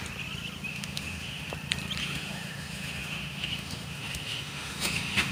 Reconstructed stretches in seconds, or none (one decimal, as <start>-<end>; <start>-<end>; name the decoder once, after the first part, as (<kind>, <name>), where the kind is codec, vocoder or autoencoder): 0.7-1.5 (autoencoder, DAC-VAE); 2.0-5.3